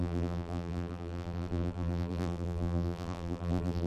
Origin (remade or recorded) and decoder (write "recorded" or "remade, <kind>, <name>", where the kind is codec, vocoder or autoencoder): remade, vocoder, BigVGAN v2